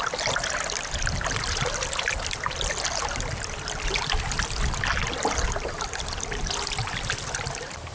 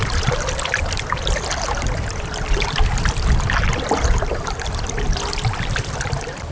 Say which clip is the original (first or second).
first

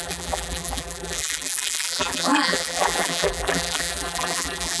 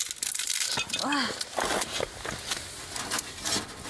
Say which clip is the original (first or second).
second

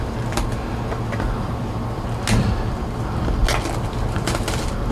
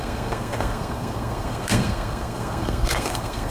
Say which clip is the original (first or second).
first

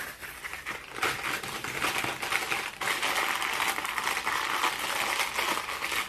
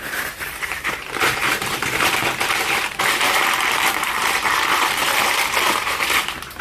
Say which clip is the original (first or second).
first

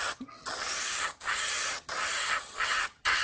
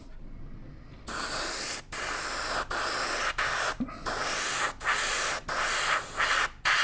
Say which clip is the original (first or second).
second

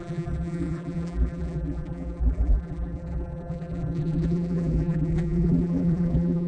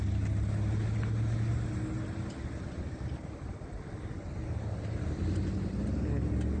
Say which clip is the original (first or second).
second